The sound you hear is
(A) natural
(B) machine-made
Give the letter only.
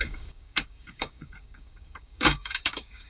B